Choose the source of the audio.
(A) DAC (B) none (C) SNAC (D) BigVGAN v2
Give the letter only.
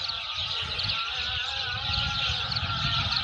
B